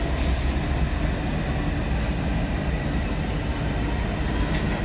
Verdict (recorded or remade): recorded